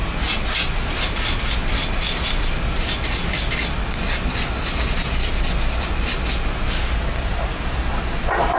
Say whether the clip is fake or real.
real